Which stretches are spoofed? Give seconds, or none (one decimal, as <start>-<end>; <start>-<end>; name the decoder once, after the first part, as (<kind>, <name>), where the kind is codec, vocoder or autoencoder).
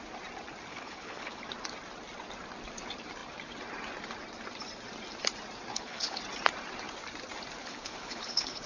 0.7-1.4 (codec, HILCodec); 5.7-6.2; 7.6-8.7